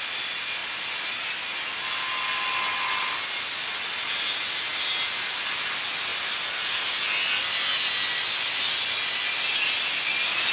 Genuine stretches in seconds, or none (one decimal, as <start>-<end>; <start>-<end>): 0.0-10.5